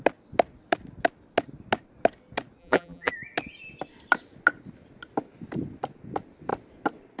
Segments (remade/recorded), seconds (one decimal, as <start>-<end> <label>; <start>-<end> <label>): 0.0-2.6 recorded; 2.6-3.1 remade; 3.1-7.2 recorded